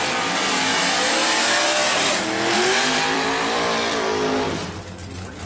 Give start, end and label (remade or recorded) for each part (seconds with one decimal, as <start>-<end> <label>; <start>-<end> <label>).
0.0-1.2 recorded; 1.2-4.5 remade; 4.5-5.5 recorded